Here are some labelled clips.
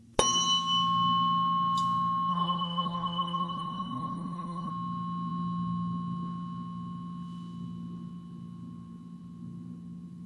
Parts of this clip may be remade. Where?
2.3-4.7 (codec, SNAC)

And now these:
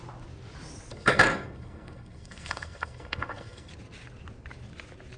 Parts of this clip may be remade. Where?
0.9-3.7 (codec, SNAC)

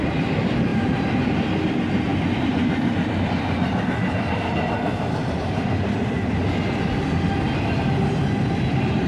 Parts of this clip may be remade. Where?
0.7-1.2 (vocoder, BigVGAN v2); 4.9-5.9

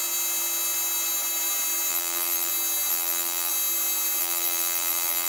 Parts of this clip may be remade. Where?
1.9-2.5 (vocoder, BigVGAN v2); 2.9-3.5; 4.2-5.3

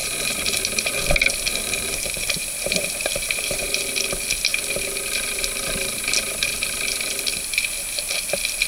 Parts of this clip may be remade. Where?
0.0-0.6 (vocoder, BigVGAN v2); 1.5-3.9